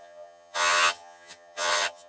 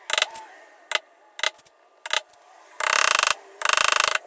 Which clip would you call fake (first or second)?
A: first